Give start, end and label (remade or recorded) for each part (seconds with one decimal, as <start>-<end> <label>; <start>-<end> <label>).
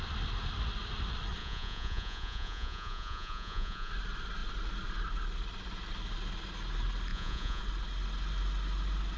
0.0-1.4 recorded; 1.4-3.9 remade; 3.9-7.1 recorded; 7.1-7.6 remade; 7.6-9.2 recorded